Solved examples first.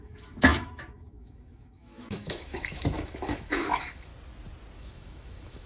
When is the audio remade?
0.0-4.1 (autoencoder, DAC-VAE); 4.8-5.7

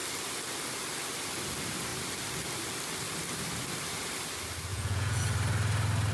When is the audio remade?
4.7-5.2 (vocoder, Vocos)

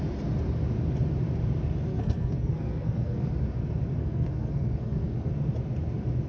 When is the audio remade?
1.9-3.3 (codec, SNAC); 4.0-5.3